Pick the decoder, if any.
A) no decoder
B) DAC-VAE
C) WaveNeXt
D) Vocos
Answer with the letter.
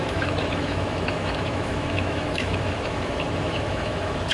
B